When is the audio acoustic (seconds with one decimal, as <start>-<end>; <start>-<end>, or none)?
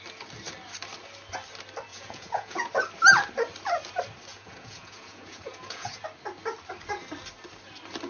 0.0-1.9; 2.7-4.3; 6.0-8.1